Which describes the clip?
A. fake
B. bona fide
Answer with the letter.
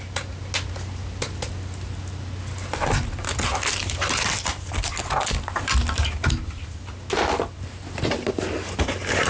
B